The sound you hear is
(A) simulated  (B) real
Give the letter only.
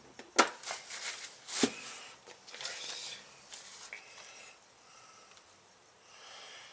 B